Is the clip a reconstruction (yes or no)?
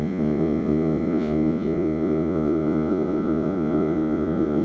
yes